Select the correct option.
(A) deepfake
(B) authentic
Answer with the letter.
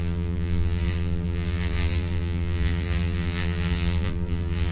A